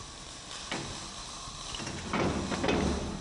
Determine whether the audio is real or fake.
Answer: real